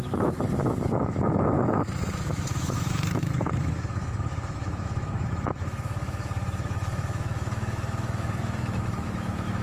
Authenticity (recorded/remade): remade